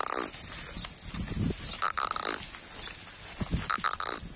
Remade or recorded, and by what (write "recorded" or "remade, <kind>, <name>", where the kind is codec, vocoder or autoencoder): recorded